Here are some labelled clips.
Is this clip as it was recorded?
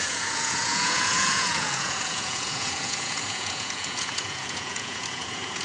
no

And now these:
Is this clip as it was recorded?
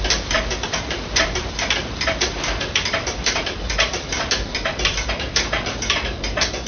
no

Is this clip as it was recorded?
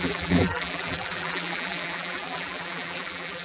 no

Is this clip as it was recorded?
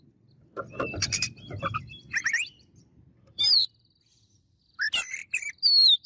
no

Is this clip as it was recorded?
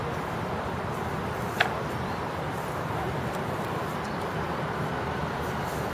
no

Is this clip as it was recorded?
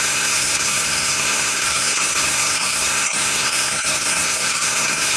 no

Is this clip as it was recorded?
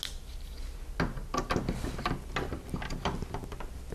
yes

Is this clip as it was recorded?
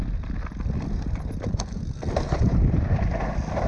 yes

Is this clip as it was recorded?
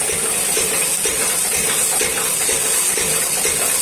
yes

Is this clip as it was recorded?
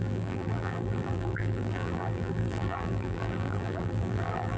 no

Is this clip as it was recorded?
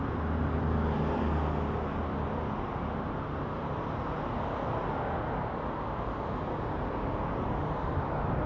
yes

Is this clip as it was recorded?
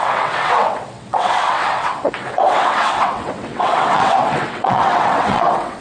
no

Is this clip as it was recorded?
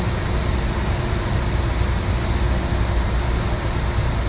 yes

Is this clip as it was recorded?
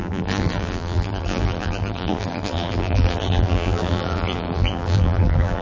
no